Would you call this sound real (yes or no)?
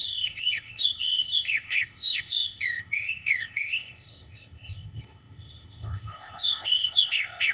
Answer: no